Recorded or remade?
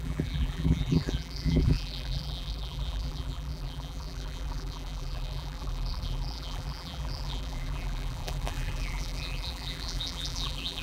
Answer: remade